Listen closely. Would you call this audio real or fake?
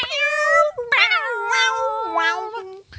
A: real